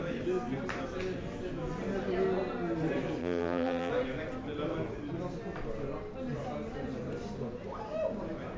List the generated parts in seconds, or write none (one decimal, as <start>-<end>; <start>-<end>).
3.2-3.9